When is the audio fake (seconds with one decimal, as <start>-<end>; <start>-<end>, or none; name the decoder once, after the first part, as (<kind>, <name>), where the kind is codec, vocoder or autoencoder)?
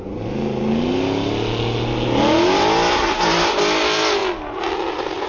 none